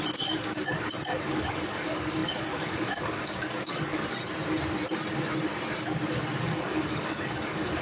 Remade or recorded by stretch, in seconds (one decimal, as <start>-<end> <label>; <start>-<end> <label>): 0.0-4.0 remade; 4.0-6.4 recorded; 6.4-7.8 remade